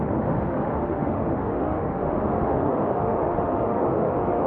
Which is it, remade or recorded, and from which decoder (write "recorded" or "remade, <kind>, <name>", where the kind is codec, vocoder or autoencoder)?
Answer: remade, autoencoder, DAC-VAE